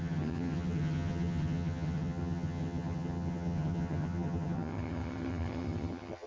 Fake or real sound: fake